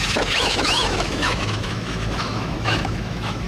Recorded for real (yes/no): no